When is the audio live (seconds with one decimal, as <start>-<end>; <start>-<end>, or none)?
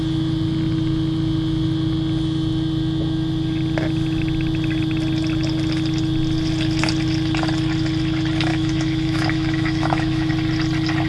0.0-8.5; 10.3-11.1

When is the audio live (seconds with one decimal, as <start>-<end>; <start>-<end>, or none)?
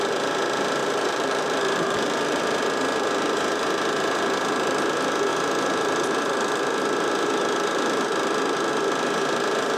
0.0-0.8; 2.6-9.8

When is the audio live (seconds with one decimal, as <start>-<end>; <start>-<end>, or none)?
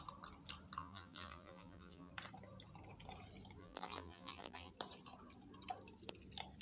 0.0-0.8; 2.1-3.6; 4.7-6.6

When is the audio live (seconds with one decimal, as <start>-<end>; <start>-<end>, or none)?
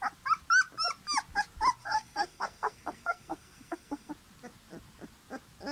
0.0-1.8; 4.1-5.7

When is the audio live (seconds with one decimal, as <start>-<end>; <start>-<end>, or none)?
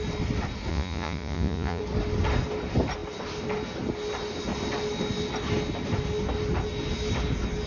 0.0-0.7; 1.8-7.7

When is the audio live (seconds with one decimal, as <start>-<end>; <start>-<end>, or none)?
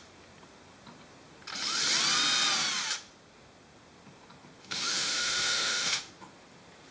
0.0-4.6; 6.1-6.9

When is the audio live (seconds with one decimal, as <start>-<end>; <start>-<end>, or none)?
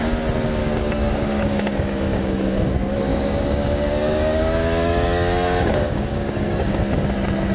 0.0-0.6; 2.6-3.1; 6.8-7.5